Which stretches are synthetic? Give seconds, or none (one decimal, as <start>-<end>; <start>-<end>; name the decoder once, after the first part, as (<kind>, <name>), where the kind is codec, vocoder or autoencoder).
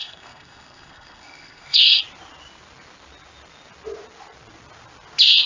0.0-2.0 (codec, SNAC)